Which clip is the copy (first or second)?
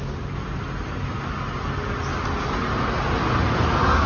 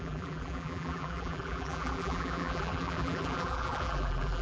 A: second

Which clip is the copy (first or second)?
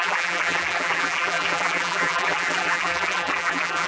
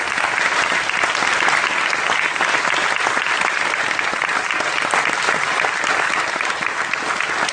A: first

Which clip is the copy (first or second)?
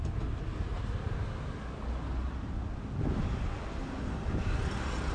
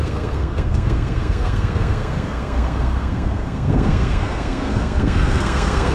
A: second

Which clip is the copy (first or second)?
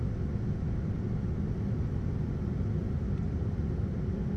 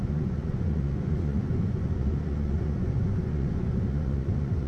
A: second